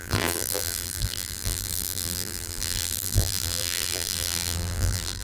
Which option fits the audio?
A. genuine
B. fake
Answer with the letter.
B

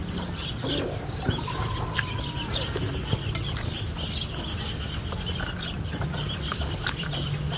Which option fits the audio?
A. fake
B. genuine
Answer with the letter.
B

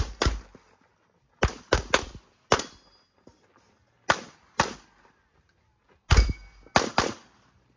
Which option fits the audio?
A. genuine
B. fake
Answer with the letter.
A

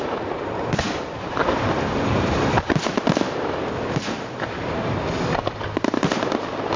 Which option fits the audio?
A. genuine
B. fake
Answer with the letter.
B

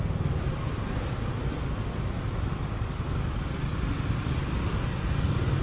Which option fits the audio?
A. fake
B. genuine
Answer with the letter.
B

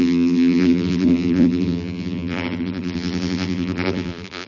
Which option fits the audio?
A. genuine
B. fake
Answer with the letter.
B